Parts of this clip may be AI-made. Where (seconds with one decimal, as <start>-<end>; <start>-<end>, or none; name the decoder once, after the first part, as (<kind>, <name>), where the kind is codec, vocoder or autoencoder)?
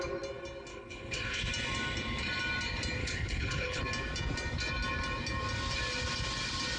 0.7-1.5 (codec, HILCodec); 3.0-3.8